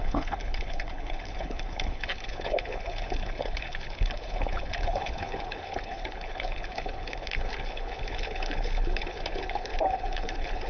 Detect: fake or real fake